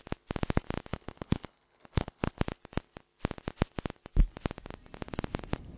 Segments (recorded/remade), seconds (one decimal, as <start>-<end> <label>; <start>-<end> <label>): 0.0-0.9 recorded; 0.9-2.4 remade; 2.4-5.8 recorded